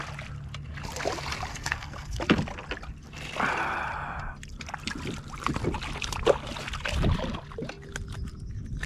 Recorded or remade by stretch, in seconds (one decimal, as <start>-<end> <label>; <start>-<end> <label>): 0.0-1.5 recorded; 1.5-2.2 remade; 2.2-8.9 recorded